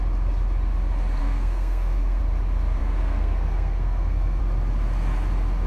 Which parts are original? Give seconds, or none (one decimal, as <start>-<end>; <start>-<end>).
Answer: 0.0-1.2; 2.2-2.8; 4.4-5.7